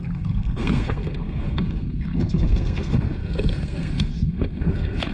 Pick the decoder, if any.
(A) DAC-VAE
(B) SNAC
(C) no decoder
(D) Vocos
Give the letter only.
B